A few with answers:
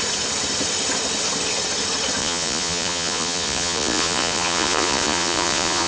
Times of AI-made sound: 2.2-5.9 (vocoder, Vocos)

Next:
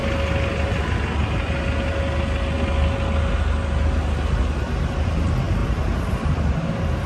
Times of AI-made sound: 5.6-6.4 (vocoder, BigVGAN v2)

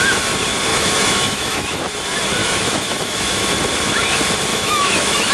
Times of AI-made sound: 0.7-1.8 (autoencoder, DAC-VAE); 2.4-3.5; 4.5-5.3

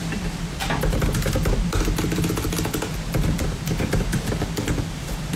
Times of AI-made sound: 0.0-0.6 (vocoder, BigVGAN v2); 1.1-5.4

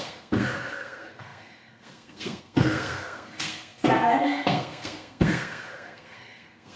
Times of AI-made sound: 0.0-6.8 (codec, SNAC)

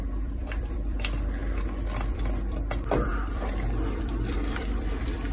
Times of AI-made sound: 0.0-1.4 (vocoder, BigVGAN v2); 2.1-5.3

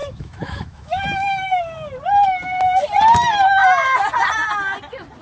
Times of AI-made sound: 0.0-1.6 (autoencoder, DAC-VAE)

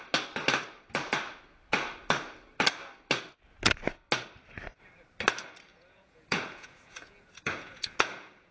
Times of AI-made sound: 5.7-8.5 (vocoder, Vocos)